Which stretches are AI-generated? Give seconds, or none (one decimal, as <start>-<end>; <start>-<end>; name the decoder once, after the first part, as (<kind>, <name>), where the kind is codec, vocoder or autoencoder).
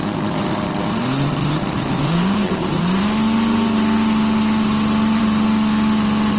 0.0-3.0 (vocoder, BigVGAN v2)